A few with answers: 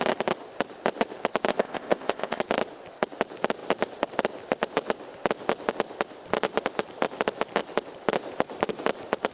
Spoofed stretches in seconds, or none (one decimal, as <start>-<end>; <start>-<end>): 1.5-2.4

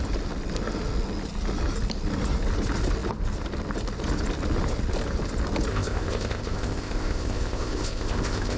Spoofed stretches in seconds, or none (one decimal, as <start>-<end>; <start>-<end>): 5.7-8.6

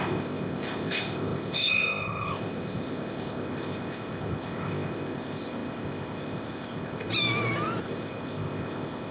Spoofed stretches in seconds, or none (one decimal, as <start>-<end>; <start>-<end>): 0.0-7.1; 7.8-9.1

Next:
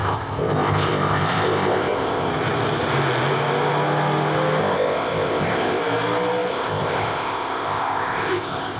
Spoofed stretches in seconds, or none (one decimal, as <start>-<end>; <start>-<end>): 0.0-2.3; 4.6-5.8; 6.5-8.8

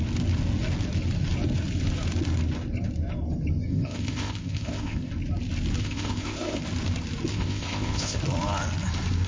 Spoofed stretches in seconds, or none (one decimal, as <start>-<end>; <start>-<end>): 3.7-5.1; 5.8-6.6; 7.3-8.2

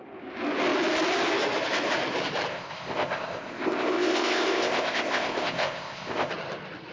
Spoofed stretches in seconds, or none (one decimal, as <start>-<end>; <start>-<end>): 2.5-6.3

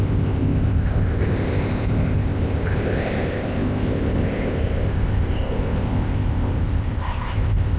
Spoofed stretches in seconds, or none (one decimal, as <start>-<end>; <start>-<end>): 0.0-7.8

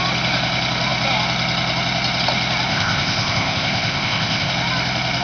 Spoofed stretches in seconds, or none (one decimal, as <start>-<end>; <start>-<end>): 2.7-4.5